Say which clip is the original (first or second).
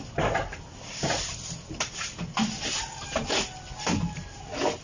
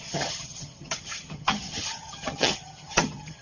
first